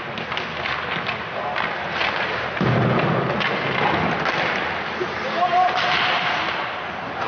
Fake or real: real